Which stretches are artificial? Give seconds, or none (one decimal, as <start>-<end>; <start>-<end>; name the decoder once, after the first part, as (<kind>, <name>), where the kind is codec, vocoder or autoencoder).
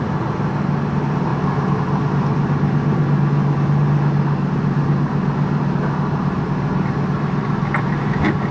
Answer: none